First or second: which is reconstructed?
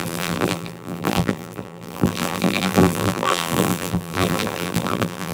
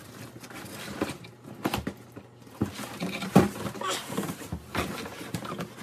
first